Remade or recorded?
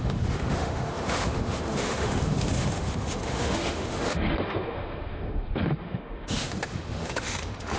remade